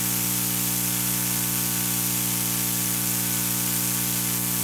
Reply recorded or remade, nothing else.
recorded